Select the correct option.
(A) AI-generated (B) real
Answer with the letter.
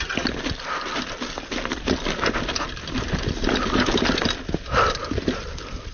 B